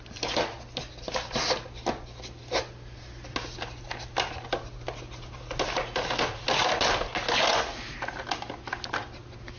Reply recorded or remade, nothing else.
recorded